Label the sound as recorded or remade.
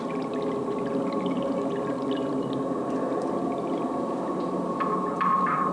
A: recorded